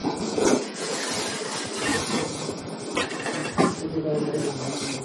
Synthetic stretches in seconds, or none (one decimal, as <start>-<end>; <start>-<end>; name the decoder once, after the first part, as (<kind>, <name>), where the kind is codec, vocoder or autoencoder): 0.0-1.0 (vocoder, Vocos); 1.9-2.6